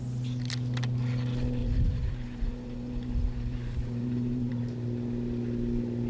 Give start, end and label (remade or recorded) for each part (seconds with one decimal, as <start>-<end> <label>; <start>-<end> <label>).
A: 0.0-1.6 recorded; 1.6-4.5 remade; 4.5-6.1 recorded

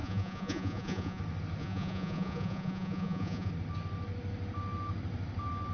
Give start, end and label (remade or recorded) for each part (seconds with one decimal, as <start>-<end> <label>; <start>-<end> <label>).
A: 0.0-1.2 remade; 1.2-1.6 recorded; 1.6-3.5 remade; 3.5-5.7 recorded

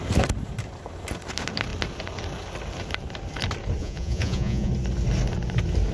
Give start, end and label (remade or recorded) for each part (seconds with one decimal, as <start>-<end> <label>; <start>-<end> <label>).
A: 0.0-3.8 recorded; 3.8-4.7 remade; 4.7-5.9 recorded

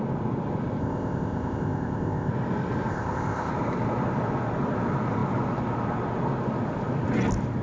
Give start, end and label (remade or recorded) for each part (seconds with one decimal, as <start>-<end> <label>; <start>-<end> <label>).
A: 0.0-0.8 recorded; 0.8-2.3 remade; 2.3-2.9 recorded; 2.9-3.5 remade; 3.5-7.6 recorded